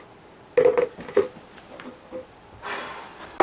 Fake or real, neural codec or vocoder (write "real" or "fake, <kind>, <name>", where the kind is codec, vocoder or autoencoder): real